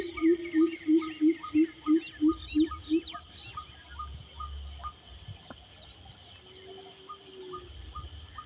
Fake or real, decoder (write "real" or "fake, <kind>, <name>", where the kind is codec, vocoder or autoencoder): real